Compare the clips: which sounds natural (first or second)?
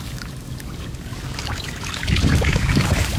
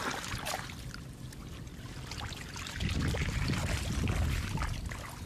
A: second